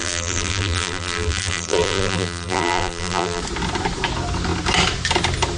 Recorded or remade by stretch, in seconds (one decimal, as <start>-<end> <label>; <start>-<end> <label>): 0.0-3.4 remade; 3.4-5.6 recorded